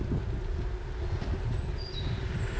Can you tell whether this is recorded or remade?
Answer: recorded